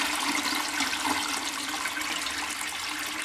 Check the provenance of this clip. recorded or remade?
recorded